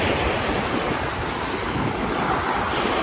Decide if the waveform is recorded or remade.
recorded